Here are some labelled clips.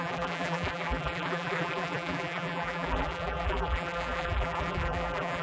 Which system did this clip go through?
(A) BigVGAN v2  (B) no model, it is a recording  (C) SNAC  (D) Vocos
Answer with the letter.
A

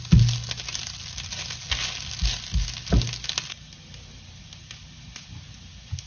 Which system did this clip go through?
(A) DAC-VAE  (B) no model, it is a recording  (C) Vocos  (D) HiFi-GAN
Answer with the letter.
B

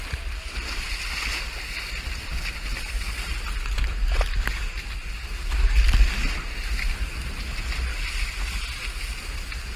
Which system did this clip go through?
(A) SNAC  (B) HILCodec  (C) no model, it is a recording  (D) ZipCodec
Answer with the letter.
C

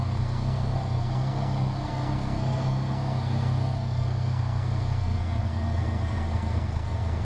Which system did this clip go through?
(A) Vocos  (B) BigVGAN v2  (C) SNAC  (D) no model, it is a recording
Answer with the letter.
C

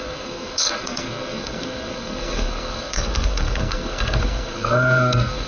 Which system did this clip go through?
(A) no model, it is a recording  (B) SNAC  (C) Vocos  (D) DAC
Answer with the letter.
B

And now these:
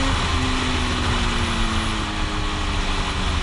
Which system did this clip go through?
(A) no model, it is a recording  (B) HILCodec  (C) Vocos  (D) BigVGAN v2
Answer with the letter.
A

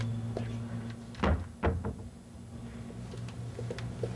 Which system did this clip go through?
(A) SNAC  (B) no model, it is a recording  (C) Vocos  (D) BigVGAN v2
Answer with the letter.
B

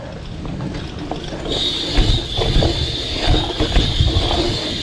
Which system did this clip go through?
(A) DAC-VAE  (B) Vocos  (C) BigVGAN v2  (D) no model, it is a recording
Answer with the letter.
D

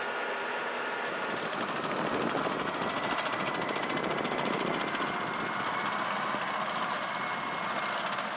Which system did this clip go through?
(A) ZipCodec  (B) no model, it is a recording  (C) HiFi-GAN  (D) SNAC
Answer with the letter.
B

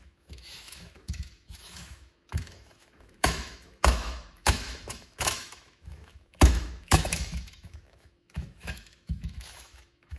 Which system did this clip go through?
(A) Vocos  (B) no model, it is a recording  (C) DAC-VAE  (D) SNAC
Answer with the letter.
C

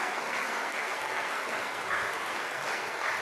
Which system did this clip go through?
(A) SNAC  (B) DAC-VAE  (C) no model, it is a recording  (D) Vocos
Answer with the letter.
A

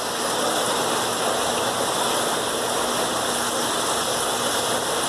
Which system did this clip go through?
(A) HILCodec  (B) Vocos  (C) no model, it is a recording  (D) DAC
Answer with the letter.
C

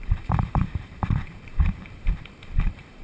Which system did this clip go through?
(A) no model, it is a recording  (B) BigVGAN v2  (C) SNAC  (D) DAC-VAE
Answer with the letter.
B